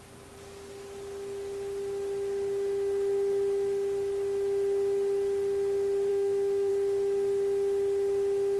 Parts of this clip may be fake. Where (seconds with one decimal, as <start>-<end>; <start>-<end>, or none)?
6.1-6.7